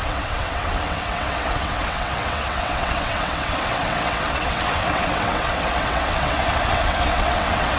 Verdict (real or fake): fake